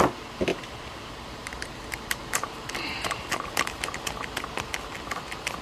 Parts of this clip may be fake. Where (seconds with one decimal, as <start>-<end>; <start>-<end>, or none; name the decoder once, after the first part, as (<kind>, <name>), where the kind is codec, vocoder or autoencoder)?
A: 0.5-3.9 (vocoder, BigVGAN v2)

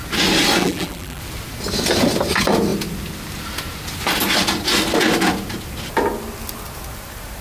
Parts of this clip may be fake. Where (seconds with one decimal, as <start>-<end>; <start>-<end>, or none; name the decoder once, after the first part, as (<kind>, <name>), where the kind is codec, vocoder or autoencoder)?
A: 0.6-1.2 (vocoder, BigVGAN v2)

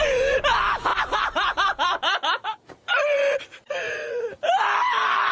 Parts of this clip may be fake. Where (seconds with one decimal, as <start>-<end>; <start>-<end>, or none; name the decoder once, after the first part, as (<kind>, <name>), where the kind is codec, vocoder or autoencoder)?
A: 0.9-4.1 (vocoder, BigVGAN v2)

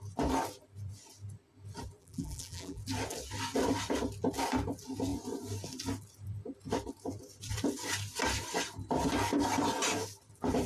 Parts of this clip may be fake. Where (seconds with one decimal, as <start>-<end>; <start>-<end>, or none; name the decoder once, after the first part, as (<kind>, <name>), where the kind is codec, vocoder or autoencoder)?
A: 2.0-2.8 (vocoder, BigVGAN v2)